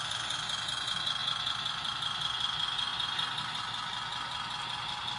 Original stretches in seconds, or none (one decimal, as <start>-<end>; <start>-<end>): 0.0-5.2